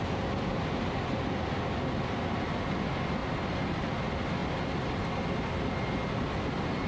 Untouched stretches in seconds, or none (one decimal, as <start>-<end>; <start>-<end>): 0.0-6.9